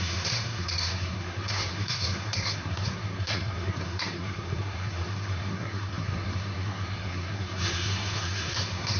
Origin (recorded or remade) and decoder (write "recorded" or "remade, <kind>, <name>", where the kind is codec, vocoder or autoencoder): remade, codec, SNAC